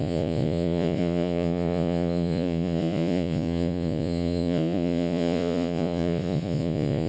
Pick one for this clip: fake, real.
fake